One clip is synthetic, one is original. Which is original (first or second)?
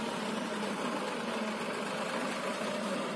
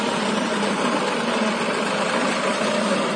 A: first